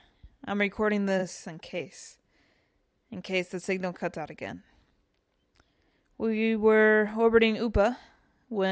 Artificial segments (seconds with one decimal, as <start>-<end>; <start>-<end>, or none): 1.2-1.8